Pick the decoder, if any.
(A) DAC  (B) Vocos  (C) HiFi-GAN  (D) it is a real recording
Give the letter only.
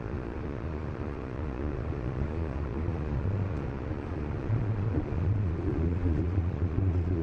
B